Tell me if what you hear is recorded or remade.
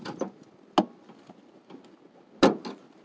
recorded